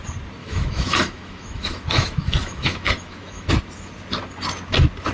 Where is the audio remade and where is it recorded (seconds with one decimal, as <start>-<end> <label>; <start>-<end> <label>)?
0.0-0.4 recorded; 0.4-3.5 remade; 3.5-5.1 recorded